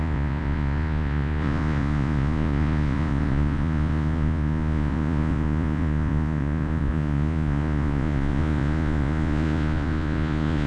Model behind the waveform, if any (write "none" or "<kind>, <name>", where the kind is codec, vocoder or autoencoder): vocoder, Vocos